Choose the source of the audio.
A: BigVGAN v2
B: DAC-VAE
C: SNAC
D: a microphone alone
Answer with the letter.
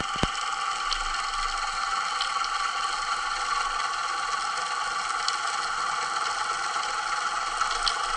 D